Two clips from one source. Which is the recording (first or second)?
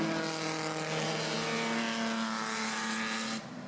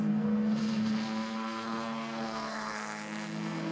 first